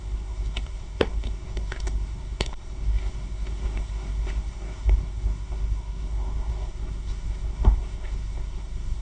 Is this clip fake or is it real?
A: fake